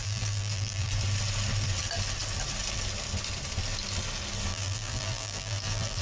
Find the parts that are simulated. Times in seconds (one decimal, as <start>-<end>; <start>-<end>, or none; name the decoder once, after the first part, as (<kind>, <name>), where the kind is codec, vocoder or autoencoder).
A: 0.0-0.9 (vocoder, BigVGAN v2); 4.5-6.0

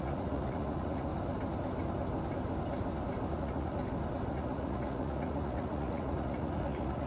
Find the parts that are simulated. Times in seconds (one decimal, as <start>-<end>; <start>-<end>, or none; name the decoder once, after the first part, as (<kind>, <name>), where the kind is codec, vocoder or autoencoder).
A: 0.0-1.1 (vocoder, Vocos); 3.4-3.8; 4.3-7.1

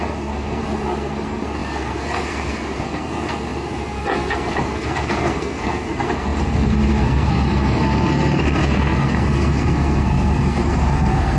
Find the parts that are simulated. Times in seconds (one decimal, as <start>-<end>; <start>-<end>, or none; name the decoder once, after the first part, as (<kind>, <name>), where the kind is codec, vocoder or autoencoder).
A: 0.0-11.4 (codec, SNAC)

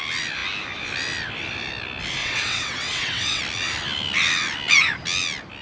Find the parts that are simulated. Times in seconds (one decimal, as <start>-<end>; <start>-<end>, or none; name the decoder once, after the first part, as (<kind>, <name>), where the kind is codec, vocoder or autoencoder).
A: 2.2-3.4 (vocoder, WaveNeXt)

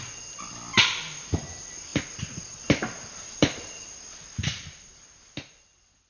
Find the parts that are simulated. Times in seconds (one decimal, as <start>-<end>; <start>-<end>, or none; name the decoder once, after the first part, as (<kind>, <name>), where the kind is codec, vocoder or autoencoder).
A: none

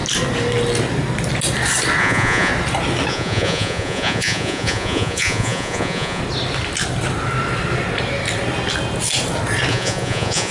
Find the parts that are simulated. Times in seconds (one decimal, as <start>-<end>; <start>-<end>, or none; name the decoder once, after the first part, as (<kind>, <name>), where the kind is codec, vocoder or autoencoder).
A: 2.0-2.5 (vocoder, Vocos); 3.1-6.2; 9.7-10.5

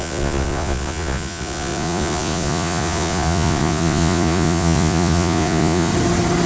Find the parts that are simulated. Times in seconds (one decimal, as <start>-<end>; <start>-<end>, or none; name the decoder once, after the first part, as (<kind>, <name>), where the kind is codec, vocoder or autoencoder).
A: 0.0-5.9 (vocoder, Vocos)

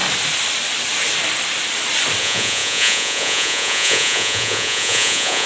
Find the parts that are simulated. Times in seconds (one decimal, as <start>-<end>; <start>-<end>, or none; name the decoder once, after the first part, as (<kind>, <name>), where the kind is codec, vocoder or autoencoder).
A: 2.2-5.5 (vocoder, Vocos)